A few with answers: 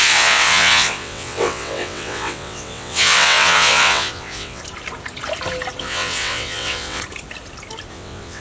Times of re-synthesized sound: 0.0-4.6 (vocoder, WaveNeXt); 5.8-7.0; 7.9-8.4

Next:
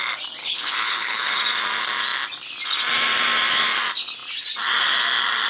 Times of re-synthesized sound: 0.4-1.4 (codec, HILCodec)

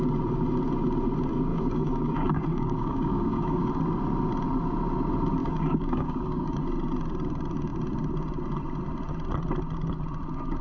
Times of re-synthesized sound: 1.5-3.7 (codec, DAC); 5.4-6.6

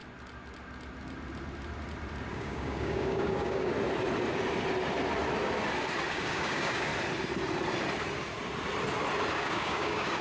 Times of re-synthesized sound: 2.3-3.7 (codec, DAC); 6.1-6.9; 9.3-10.2